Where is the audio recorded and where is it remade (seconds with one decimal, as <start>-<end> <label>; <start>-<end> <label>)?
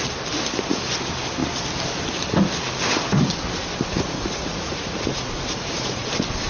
0.0-3.9 recorded; 3.9-6.1 remade; 6.1-6.5 recorded